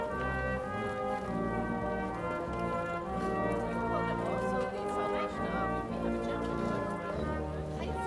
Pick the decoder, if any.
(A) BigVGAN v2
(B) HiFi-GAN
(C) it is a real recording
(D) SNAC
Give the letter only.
C